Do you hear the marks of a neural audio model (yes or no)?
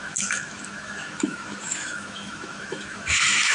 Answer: yes